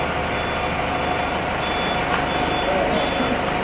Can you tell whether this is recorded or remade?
recorded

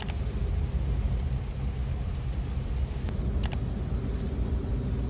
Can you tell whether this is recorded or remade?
recorded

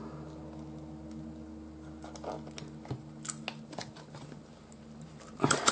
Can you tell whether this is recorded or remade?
recorded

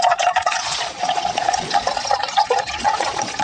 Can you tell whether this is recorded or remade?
remade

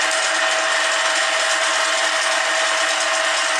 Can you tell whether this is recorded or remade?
recorded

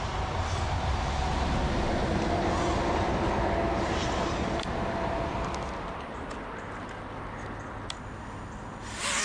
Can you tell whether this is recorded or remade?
recorded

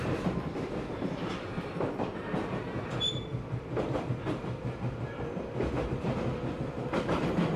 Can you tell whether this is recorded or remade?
recorded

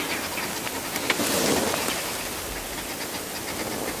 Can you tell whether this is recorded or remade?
recorded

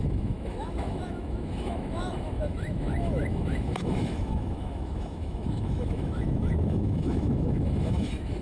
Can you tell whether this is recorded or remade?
remade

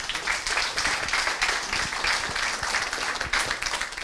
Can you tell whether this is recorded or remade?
recorded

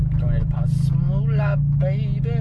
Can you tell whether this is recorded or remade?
recorded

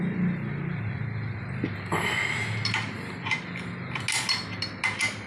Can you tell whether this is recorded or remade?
recorded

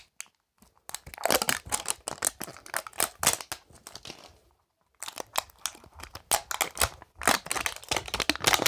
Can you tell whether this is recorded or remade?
recorded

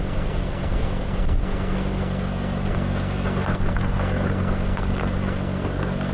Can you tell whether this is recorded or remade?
remade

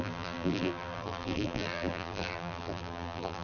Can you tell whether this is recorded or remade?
remade